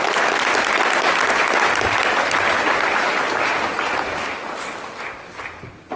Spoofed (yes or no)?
no